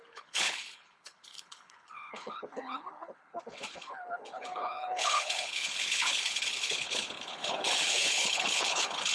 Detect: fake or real fake